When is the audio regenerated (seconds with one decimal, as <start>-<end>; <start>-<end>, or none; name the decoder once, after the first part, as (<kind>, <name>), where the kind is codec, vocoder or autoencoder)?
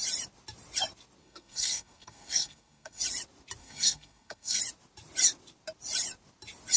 1.2-3.0 (codec, SNAC); 3.6-4.6